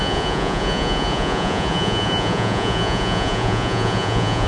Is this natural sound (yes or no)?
no